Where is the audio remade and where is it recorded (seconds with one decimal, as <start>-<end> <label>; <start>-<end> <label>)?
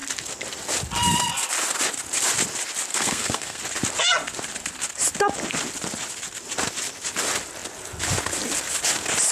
0.0-2.9 recorded; 2.9-3.6 remade; 3.6-9.3 recorded